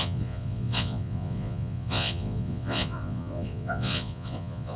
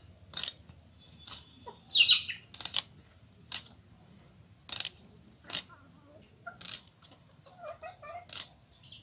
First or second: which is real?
second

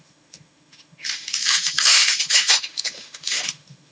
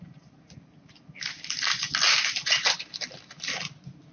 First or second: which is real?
second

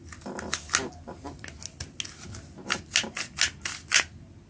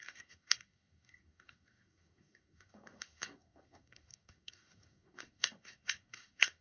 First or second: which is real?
first